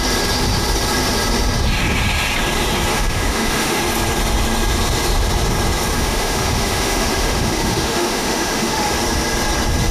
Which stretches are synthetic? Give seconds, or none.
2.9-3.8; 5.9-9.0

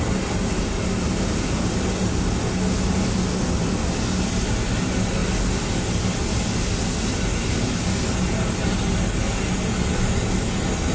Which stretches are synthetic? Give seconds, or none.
none